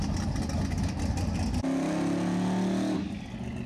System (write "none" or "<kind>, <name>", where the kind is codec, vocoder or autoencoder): none